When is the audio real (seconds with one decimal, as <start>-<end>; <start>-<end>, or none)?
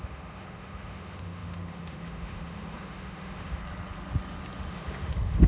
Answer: 3.6-4.7